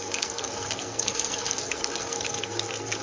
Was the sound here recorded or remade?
remade